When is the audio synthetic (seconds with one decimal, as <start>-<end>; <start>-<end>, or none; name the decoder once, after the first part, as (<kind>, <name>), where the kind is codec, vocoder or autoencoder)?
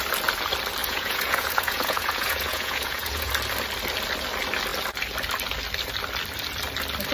0.8-3.3 (vocoder, Vocos)